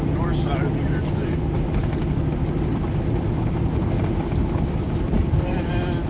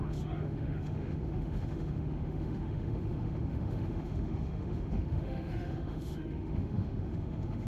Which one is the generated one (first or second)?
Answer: second